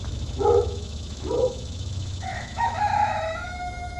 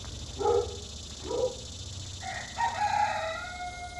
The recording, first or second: second